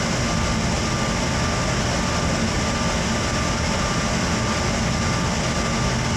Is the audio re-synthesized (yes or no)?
no